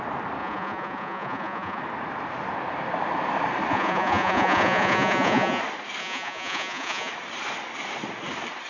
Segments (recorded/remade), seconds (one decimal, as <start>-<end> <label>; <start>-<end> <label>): 0.0-0.4 recorded; 0.4-1.8 remade; 1.8-3.7 recorded; 3.7-5.6 remade; 5.6-6.0 recorded; 6.0-7.1 remade; 7.1-8.7 recorded